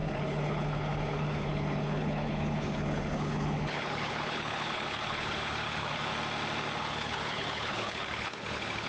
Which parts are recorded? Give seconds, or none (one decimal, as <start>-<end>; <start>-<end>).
6.1-6.8